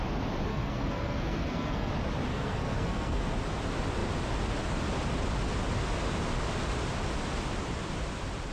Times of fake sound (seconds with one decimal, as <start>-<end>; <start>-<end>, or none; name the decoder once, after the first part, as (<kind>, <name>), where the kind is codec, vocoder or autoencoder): 0.5-1.9 (codec, SNAC); 2.3-3.3